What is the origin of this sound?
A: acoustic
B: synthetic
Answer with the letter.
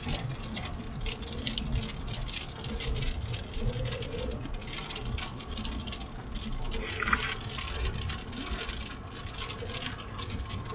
A